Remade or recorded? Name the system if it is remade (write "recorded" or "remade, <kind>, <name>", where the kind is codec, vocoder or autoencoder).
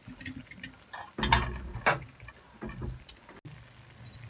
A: recorded